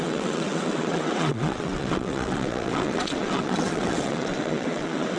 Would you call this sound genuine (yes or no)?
no